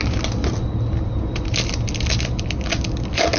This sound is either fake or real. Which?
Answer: real